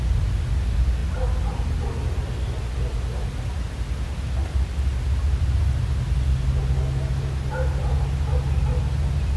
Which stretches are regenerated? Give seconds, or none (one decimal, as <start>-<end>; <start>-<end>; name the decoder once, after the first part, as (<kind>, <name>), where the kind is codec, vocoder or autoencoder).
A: none